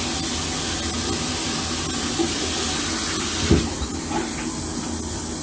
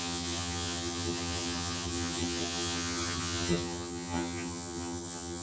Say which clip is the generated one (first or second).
second